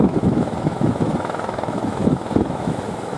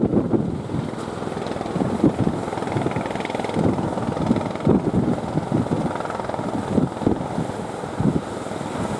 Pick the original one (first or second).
second